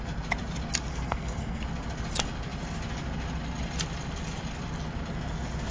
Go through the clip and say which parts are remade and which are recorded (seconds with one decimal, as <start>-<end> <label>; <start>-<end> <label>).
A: 0.0-0.9 recorded; 0.9-1.6 remade; 1.6-5.7 recorded